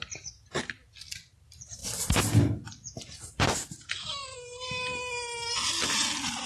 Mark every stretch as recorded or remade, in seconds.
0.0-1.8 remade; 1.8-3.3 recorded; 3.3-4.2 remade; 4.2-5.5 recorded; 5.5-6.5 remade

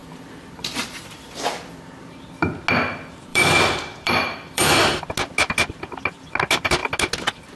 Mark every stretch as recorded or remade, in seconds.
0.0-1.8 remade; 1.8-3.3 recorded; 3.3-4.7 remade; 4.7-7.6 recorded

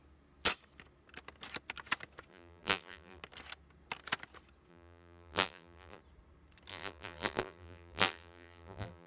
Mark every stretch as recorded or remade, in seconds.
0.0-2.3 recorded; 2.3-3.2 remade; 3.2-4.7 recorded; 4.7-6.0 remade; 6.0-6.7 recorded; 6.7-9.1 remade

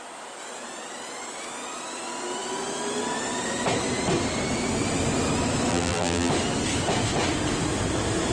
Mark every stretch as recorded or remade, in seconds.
0.0-5.7 recorded; 5.7-6.3 remade; 6.3-8.3 recorded